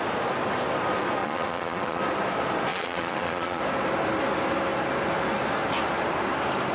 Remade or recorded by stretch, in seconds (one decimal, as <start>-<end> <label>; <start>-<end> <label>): 0.0-1.2 recorded; 1.2-2.0 remade; 2.0-2.7 recorded; 2.7-3.6 remade; 3.6-6.7 recorded